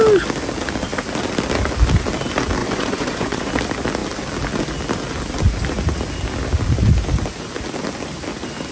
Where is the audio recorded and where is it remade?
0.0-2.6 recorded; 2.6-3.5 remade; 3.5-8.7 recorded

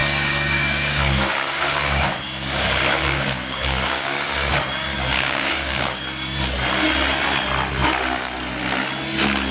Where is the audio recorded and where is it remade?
0.0-4.5 remade; 4.5-4.9 recorded; 4.9-6.0 remade; 6.0-9.5 recorded

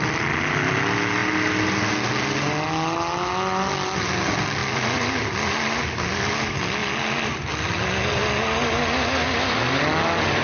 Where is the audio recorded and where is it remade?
0.0-4.6 recorded; 4.6-5.2 remade; 5.2-10.4 recorded

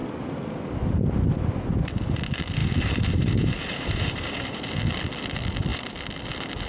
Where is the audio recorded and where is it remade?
0.0-2.6 recorded; 2.6-4.6 remade; 4.6-6.7 recorded

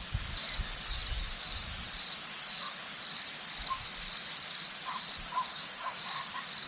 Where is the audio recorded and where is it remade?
0.0-5.5 recorded; 5.5-6.3 remade; 6.3-6.7 recorded